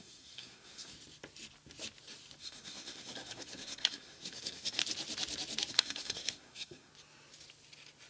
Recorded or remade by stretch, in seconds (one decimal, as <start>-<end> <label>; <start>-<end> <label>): 0.0-0.9 remade; 0.9-2.4 recorded; 2.4-4.8 remade; 4.8-5.7 recorded; 5.7-6.9 remade; 6.9-8.1 recorded